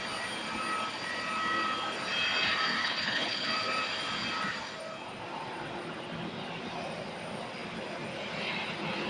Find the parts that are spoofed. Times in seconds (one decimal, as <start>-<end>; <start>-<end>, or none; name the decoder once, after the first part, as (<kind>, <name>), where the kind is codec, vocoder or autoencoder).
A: 2.8-3.5 (codec, HILCodec)